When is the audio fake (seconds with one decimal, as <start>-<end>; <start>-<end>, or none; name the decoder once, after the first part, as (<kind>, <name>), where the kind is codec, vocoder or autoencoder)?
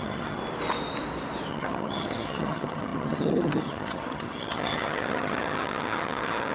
0.0-0.4 (vocoder, HiFi-GAN); 1.5-6.5